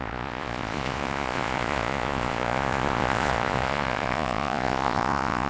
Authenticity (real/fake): fake